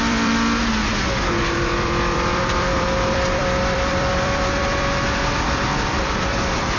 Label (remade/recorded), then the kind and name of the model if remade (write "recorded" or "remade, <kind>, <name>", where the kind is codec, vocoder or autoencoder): remade, vocoder, BigVGAN v2